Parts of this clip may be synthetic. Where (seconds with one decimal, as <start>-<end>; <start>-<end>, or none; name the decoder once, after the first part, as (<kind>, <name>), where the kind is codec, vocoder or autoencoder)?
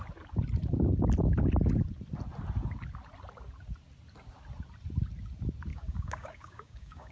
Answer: 5.7-7.1 (codec, DAC)